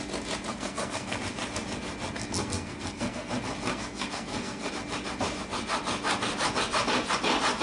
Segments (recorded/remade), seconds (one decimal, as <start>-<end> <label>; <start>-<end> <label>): 0.0-0.5 recorded; 0.5-1.2 remade; 1.2-2.4 recorded; 2.4-3.3 remade; 3.3-3.7 recorded; 3.7-4.7 remade; 4.7-7.6 recorded